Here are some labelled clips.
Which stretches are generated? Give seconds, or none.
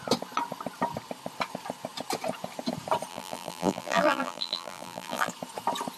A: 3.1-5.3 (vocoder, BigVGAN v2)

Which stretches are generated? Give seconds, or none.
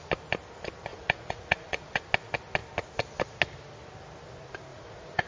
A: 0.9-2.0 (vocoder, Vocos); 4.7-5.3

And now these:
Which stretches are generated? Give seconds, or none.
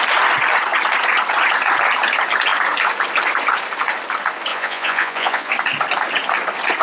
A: 4.5-5.5 (vocoder, Vocos)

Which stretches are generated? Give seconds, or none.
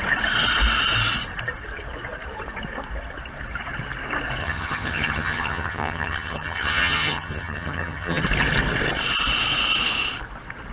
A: 4.4-8.2 (vocoder, HiFi-GAN)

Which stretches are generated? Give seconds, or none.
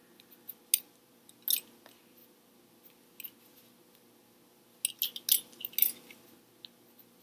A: none